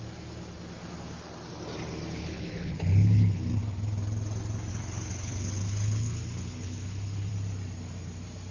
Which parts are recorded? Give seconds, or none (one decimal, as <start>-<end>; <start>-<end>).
0.0-2.2; 3.6-4.7; 7.3-8.5